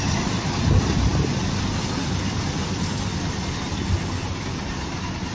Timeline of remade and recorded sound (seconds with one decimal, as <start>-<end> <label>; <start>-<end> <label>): 0.0-5.3 recorded